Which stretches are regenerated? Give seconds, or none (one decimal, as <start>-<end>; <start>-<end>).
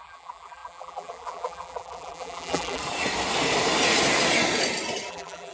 0.0-2.8; 5.1-5.5